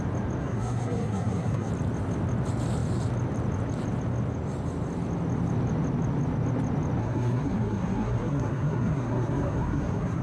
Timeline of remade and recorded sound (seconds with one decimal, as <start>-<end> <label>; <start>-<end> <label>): 0.0-0.4 recorded; 0.4-1.7 remade; 1.7-7.0 recorded; 7.0-10.2 remade